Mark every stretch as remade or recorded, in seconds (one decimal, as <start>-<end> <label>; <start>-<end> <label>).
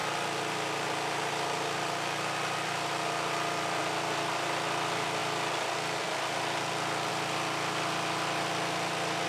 0.0-3.8 remade; 3.8-9.3 recorded